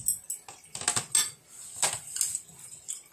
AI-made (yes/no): no